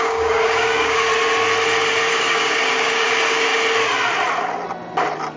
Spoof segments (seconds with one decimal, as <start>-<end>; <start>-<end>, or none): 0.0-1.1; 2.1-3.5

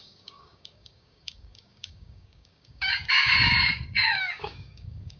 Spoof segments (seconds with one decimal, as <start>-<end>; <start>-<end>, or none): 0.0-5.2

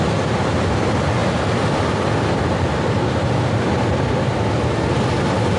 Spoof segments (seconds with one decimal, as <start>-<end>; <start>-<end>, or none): none

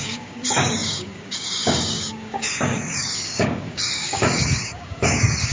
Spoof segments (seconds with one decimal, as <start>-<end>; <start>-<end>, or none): 0.0-5.5

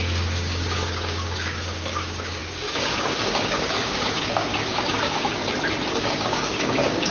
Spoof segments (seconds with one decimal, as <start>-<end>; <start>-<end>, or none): 0.0-5.4; 6.0-7.1